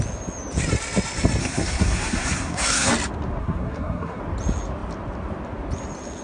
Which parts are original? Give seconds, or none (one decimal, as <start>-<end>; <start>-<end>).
0.0-1.4; 2.9-3.4; 4.2-6.2